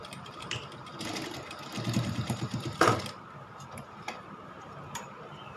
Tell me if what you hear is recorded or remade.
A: remade